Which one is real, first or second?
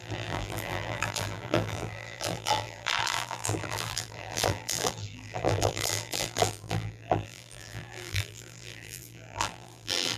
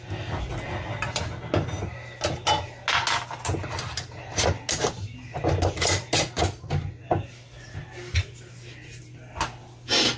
second